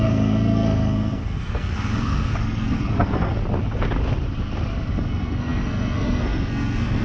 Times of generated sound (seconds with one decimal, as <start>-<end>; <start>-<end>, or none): 0.0-3.4; 5.0-7.0